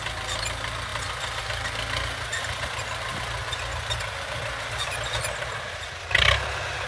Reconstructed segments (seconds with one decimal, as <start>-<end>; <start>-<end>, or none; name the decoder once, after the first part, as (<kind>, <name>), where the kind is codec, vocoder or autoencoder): none